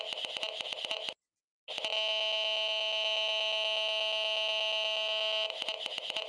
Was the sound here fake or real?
real